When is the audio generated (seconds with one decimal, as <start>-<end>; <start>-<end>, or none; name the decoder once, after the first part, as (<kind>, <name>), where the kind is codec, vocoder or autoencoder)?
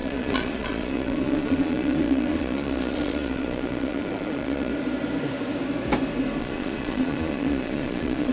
0.0-4.7 (vocoder, Vocos); 6.4-8.3